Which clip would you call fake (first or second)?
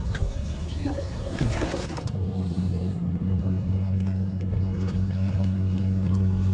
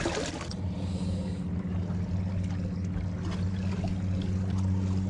first